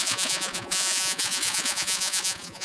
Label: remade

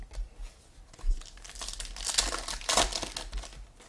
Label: recorded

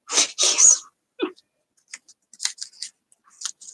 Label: recorded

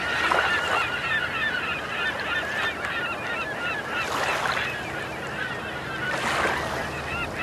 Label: recorded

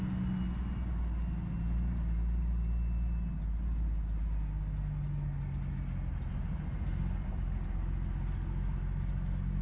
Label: recorded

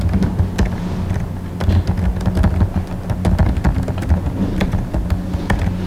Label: recorded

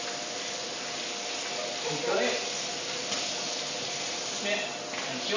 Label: recorded